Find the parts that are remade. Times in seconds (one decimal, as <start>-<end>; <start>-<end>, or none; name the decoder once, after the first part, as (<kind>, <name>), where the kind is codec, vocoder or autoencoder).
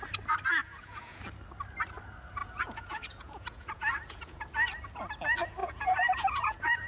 0.6-1.2 (vocoder, Vocos); 2.4-4.4; 5.6-6.9